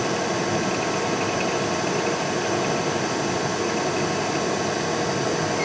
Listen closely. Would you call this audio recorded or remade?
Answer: recorded